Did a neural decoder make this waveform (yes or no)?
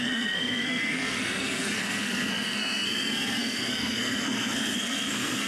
yes